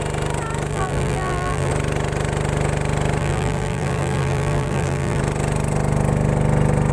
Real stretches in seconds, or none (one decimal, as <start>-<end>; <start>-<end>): 0.0-0.7; 1.7-3.2; 5.2-6.9